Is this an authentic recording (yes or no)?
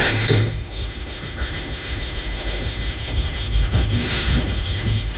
no